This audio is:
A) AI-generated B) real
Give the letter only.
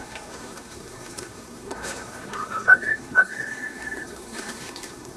A